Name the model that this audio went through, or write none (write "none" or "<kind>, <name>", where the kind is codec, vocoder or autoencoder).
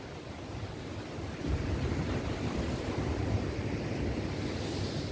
none